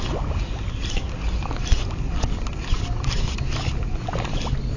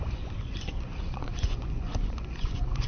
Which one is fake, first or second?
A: second